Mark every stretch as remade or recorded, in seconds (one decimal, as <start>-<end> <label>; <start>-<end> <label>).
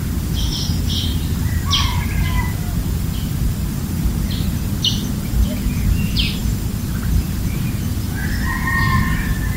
0.0-9.6 recorded